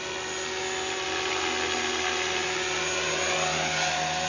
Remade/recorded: recorded